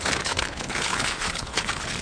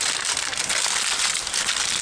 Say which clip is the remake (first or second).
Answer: first